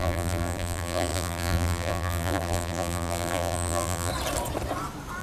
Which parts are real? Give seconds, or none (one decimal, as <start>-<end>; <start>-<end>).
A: 4.1-5.2

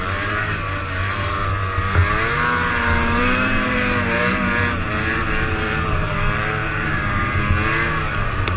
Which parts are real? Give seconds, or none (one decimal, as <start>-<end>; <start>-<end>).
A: 1.4-2.7; 7.2-8.1

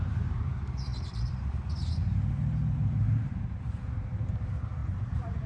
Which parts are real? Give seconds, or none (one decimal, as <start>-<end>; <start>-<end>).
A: none

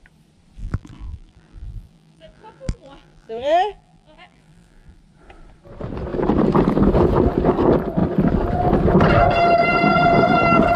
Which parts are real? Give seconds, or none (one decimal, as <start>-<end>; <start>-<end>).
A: 0.0-0.6; 5.0-10.8

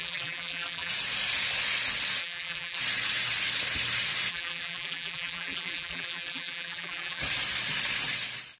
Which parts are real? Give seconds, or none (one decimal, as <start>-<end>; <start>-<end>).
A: 0.9-2.2; 2.8-4.3; 7.2-8.6